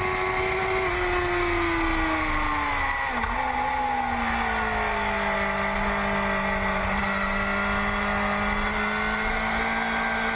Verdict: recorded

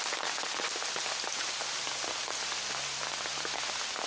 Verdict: recorded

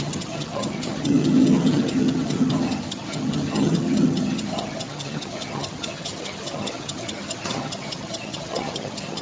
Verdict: remade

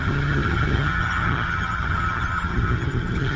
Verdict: remade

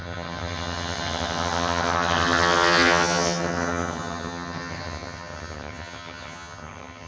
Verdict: remade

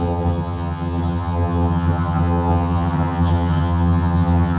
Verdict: remade